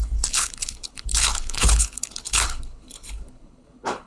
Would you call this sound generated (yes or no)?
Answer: yes